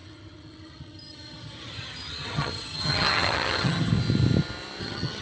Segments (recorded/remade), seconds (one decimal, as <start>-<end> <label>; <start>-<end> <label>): 0.0-3.9 remade; 3.9-4.8 recorded; 4.8-5.2 remade